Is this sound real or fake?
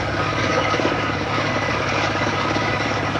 fake